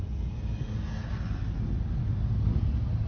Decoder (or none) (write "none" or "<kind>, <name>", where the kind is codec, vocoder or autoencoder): none